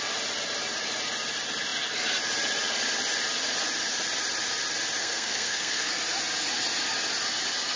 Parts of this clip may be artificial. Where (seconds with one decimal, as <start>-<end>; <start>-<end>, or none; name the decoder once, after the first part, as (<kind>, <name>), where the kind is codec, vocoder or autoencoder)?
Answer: 5.0-5.9 (codec, SNAC)